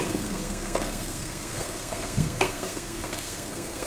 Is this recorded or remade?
remade